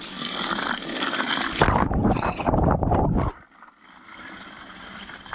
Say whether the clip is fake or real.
real